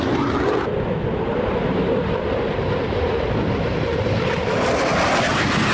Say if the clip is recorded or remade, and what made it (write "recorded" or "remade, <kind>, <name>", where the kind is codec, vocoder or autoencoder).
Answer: recorded